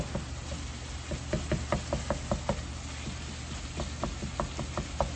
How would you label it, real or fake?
real